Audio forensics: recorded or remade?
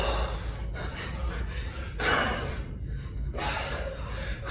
recorded